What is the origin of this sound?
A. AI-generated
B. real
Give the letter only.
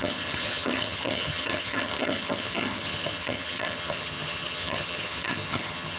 A